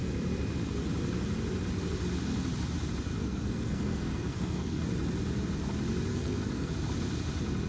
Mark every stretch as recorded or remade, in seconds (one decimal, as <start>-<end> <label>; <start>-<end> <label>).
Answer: 0.0-3.2 recorded; 3.2-4.8 remade; 4.8-6.1 recorded; 6.1-6.7 remade; 6.7-7.7 recorded